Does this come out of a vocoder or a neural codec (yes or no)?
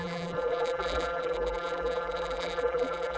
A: yes